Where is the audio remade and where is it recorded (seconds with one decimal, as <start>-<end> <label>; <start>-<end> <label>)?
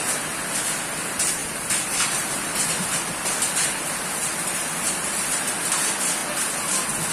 0.0-1.4 recorded; 1.4-5.7 remade; 5.7-7.1 recorded